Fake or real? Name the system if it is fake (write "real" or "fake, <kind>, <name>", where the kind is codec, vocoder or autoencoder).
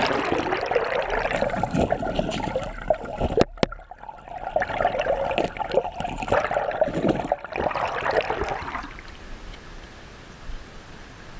real